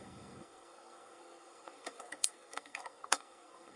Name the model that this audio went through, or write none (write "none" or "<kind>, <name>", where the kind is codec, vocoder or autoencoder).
codec, SNAC